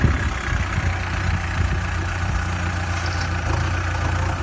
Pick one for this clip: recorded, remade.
recorded